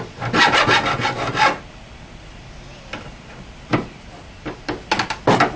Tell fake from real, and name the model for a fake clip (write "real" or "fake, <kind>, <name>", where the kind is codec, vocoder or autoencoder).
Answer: real